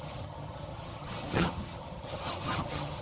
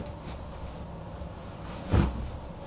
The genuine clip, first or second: second